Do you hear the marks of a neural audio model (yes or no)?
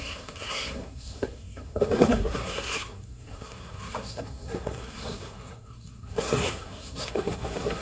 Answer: yes